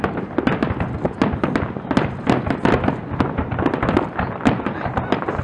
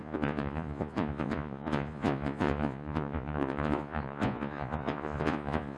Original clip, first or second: first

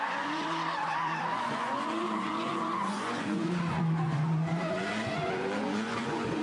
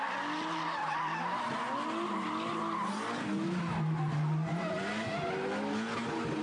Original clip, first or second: second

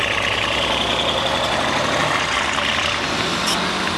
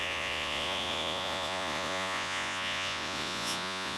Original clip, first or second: first